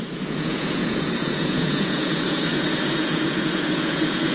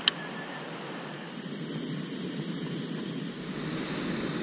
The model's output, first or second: first